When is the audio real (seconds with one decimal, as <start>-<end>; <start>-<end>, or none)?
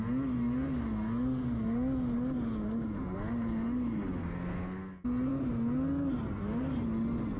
0.0-7.4